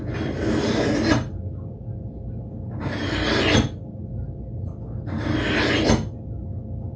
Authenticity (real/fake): real